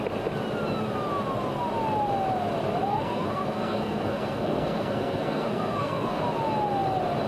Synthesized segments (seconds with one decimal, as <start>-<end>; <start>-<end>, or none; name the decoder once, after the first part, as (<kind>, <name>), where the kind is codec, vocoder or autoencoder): 2.9-6.2 (codec, SNAC)